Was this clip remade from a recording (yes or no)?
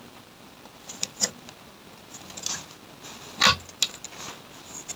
no